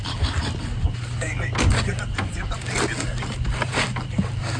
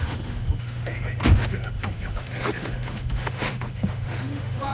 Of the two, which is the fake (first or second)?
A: second